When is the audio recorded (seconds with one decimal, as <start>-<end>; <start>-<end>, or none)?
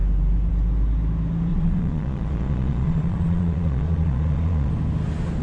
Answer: 0.0-1.5; 4.7-5.4